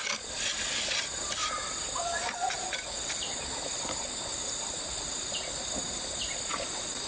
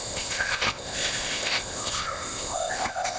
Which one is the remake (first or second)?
second